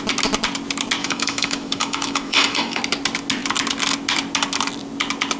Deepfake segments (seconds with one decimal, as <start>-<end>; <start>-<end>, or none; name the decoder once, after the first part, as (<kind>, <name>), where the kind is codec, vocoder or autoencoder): 1.0-2.8 (autoencoder, DAC-VAE)